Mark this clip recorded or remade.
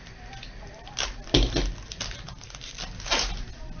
recorded